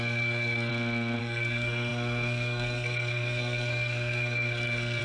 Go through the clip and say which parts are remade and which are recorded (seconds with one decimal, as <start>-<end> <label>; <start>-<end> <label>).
0.0-0.7 remade; 0.7-1.2 recorded; 1.2-5.0 remade